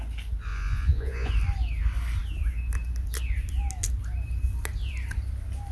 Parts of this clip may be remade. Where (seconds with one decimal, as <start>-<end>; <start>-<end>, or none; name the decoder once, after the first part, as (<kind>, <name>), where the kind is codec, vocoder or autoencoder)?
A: 0.5-1.3 (vocoder, Vocos)